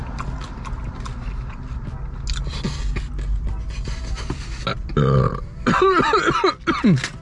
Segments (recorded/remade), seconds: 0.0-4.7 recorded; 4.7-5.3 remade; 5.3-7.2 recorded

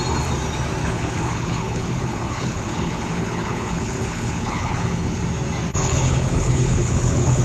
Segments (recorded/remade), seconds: 0.0-0.8 recorded; 0.8-5.2 remade; 5.2-5.7 recorded; 5.7-7.4 remade

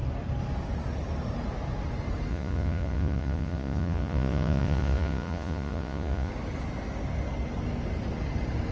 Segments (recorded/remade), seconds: 0.0-2.3 recorded; 2.3-6.3 remade; 6.3-8.7 recorded

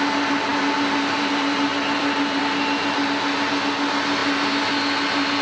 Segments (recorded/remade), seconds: 0.0-5.4 recorded

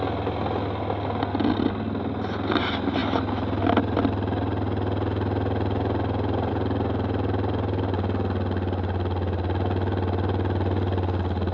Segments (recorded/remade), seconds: 0.0-11.5 recorded